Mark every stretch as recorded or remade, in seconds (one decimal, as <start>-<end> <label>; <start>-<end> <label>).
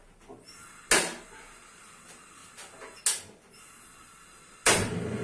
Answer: 0.0-5.2 recorded